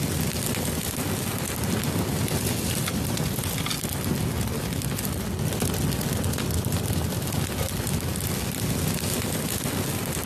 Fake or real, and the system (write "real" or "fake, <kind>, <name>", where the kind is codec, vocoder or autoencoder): real